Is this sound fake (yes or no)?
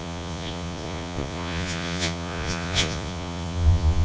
yes